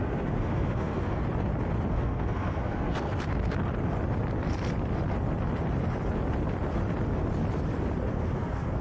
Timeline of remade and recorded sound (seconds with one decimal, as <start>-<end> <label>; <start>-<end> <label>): 0.0-1.2 remade; 1.2-1.9 recorded; 1.9-3.3 remade; 3.3-8.1 recorded; 8.1-8.8 remade

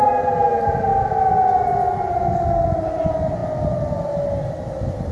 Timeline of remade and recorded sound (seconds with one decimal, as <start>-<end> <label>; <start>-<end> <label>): 0.0-5.1 recorded

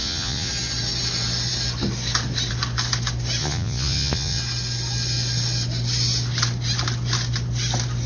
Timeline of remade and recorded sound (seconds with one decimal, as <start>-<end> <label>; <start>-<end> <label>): 0.0-0.5 remade; 0.5-3.4 recorded; 3.4-4.4 remade; 4.4-8.1 recorded

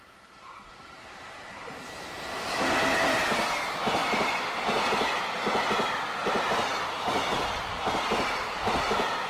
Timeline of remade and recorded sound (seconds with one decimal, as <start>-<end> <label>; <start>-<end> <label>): 0.0-0.7 recorded; 0.7-2.5 remade; 2.5-9.3 recorded